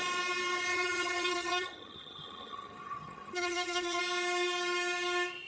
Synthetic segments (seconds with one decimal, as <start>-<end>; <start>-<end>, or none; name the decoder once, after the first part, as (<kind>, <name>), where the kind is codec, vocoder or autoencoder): 0.7-4.0 (vocoder, HiFi-GAN)